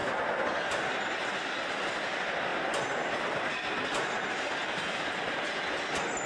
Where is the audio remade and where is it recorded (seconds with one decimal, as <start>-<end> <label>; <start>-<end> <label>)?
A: 0.0-2.5 recorded; 2.5-3.5 remade; 3.5-4.6 recorded; 4.6-5.6 remade; 5.6-6.3 recorded